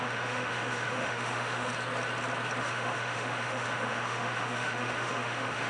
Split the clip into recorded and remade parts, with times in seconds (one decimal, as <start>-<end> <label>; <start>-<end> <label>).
0.0-1.7 remade; 1.7-2.6 recorded; 2.6-5.7 remade